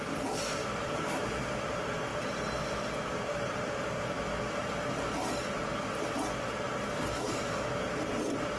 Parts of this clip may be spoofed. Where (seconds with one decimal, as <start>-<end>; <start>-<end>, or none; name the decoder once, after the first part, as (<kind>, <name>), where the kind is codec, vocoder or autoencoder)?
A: 0.6-1.3 (autoencoder, DAC-VAE)